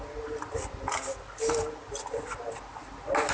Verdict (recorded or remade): recorded